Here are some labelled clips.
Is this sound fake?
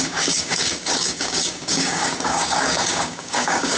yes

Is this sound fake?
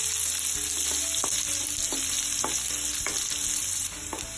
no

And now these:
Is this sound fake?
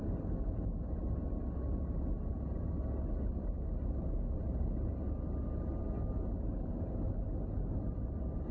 no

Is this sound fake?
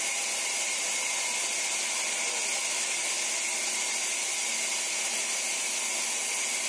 no